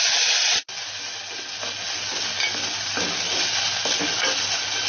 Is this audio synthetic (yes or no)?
no